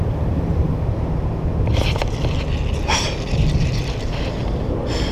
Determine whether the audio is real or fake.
real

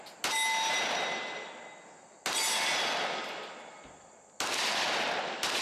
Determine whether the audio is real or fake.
real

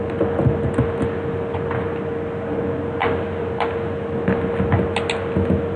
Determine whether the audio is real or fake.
real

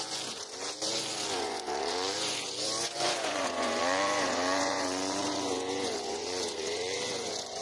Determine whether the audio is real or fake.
fake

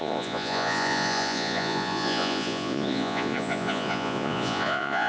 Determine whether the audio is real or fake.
fake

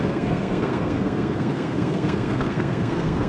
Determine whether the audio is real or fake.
fake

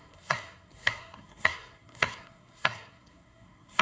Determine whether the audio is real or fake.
fake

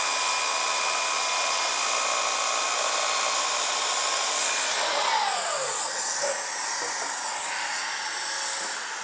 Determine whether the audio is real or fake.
real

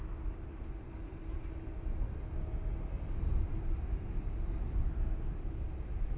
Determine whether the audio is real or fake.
real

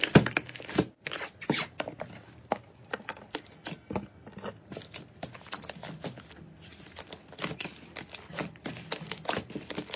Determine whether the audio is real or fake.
real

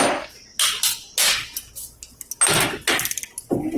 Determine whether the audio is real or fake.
real